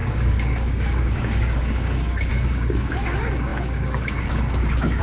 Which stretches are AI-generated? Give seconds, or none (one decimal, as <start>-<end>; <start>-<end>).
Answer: 0.0-5.0